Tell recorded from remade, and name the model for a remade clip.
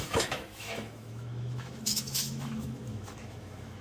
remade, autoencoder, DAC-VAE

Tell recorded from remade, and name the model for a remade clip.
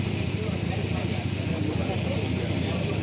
recorded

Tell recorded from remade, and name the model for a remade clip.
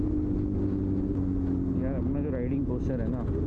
recorded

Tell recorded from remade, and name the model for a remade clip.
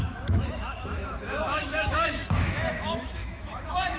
remade, autoencoder, DAC-VAE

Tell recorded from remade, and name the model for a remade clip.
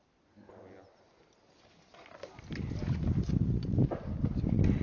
recorded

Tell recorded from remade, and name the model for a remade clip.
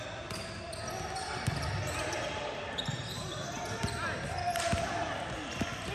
recorded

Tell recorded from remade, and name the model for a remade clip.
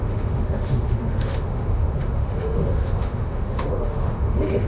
remade, autoencoder, DAC-VAE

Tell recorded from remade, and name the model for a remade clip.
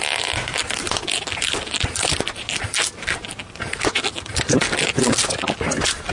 recorded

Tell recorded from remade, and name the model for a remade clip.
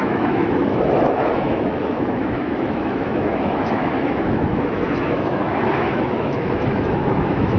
remade, autoencoder, DAC-VAE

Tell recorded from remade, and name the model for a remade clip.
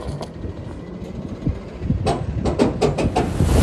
recorded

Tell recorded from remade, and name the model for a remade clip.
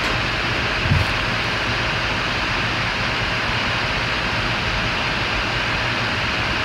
recorded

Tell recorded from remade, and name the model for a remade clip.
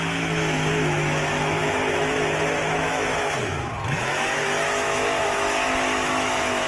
remade, autoencoder, DAC-VAE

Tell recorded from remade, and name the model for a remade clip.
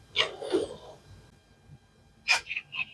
recorded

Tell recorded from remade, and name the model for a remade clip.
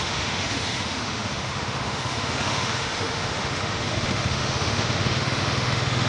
remade, autoencoder, DAC-VAE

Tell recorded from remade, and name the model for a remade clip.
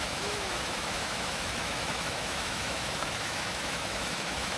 remade, autoencoder, DAC-VAE